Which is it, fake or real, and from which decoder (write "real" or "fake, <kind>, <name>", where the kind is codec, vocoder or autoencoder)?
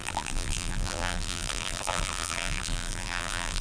fake, vocoder, BigVGAN v2